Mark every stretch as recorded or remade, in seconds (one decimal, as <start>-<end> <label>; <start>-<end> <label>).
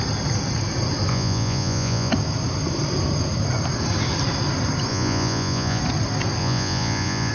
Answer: 0.0-1.1 recorded; 1.1-2.1 remade; 2.1-4.9 recorded; 4.9-5.8 remade; 5.8-6.4 recorded; 6.4-7.3 remade